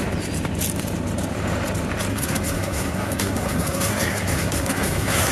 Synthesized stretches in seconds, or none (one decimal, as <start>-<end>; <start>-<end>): 2.1-5.3